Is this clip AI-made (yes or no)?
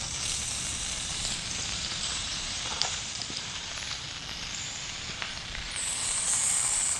yes